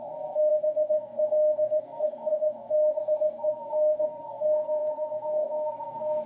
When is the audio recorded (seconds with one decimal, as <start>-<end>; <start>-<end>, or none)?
none